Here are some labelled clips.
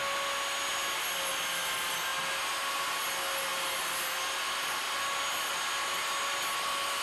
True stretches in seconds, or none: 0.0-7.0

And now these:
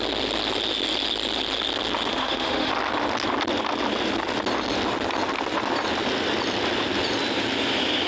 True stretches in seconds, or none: 0.0-2.1; 2.7-8.1

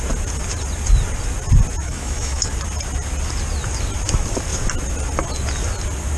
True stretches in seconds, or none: 0.0-1.8; 2.5-6.2

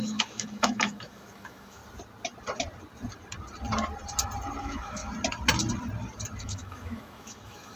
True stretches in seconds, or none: 1.8-4.6; 5.0-6.4

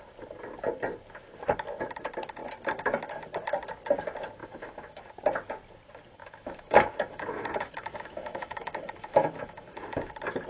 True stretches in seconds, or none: 0.0-4.4; 5.0-6.2; 10.1-10.5

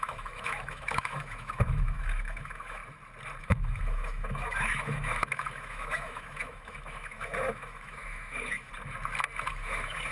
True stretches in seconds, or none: 2.8-3.4; 8.7-9.5

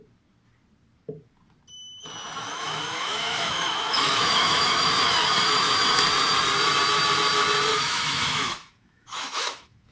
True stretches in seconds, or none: 0.0-2.4; 4.9-7.7

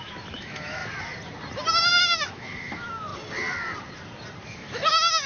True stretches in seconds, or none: 0.8-2.0; 3.1-4.5